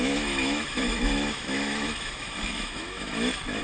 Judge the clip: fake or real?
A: fake